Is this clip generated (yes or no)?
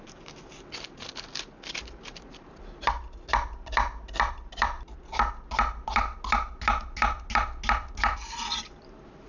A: no